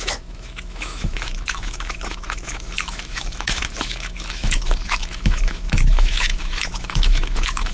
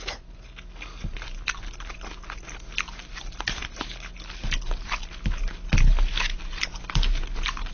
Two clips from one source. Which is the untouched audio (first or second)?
second